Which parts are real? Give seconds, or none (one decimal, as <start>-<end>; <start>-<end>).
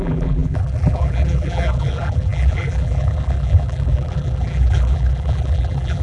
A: none